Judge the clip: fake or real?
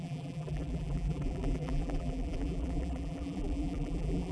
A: fake